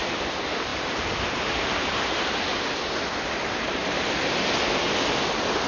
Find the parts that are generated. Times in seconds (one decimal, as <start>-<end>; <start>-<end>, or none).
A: 0.0-3.8; 5.3-5.7